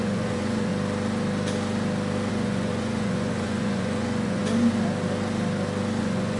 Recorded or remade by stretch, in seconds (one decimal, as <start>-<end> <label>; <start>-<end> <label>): 0.0-0.7 remade; 0.7-2.3 recorded; 2.3-4.4 remade; 4.4-6.0 recorded; 6.0-6.4 remade